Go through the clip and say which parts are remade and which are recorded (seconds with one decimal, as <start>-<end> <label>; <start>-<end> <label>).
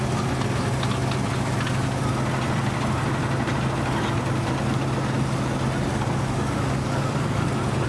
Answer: 0.0-5.9 recorded; 5.9-7.5 remade; 7.5-7.9 recorded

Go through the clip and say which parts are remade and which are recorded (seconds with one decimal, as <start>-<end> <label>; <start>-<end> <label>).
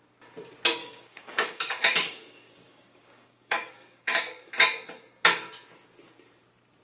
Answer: 0.0-0.8 recorded; 0.8-4.5 remade; 4.5-6.8 recorded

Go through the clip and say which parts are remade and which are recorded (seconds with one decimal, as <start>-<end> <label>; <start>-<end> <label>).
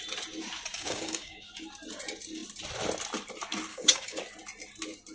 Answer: 0.0-0.7 recorded; 0.7-1.5 remade; 1.5-3.7 recorded; 3.7-4.2 remade; 4.2-5.1 recorded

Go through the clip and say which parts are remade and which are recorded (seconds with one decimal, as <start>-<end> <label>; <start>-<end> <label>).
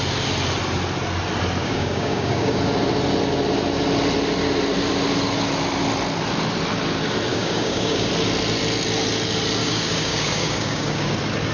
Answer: 0.0-1.6 recorded; 1.6-2.6 remade; 2.6-7.3 recorded; 7.3-8.1 remade; 8.1-9.6 recorded; 9.6-11.1 remade; 11.1-11.5 recorded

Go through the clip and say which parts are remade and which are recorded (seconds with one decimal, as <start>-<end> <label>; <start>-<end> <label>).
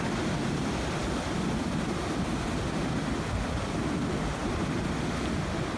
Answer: 0.0-5.8 recorded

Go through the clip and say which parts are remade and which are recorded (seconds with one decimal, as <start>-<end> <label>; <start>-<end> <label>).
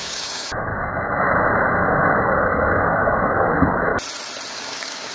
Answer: 0.0-0.7 remade; 0.7-2.4 recorded; 2.4-3.9 remade; 3.9-4.5 recorded; 4.5-5.1 remade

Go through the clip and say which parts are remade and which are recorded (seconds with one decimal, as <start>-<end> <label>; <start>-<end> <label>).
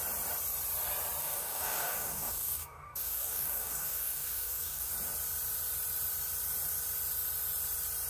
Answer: 0.0-1.2 recorded; 1.2-4.9 remade; 4.9-8.1 recorded